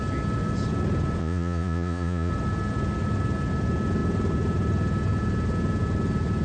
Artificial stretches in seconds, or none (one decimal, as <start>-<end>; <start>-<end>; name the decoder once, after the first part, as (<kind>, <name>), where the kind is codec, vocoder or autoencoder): 1.2-2.3 (vocoder, Vocos)